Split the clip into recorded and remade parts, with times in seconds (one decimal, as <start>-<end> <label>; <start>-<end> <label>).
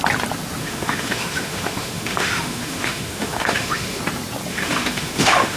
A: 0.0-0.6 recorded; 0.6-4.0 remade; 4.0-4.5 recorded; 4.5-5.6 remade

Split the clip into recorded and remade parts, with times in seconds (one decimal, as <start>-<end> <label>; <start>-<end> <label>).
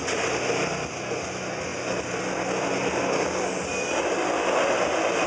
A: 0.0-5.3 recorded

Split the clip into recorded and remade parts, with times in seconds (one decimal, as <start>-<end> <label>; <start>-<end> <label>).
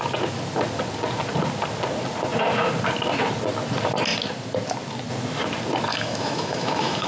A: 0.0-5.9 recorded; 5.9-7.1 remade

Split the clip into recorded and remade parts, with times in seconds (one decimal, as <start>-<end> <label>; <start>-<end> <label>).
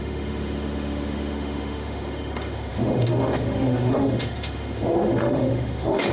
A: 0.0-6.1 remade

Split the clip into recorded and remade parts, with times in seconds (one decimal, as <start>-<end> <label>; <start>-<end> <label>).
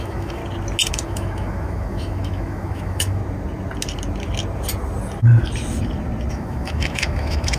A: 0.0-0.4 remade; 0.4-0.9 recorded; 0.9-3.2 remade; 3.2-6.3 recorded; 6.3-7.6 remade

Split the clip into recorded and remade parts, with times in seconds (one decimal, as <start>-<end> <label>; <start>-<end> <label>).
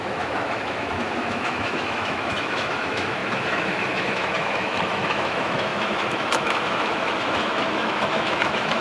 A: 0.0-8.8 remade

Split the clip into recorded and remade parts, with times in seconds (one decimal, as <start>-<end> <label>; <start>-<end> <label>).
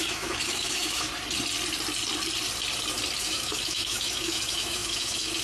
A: 0.0-1.1 remade; 1.1-3.2 recorded; 3.2-5.4 remade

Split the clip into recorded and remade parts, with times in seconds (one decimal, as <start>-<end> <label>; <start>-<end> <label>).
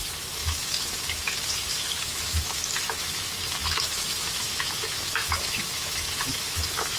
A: 0.0-7.0 remade